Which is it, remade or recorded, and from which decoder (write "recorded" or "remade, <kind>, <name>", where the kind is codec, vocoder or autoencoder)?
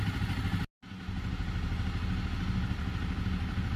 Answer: recorded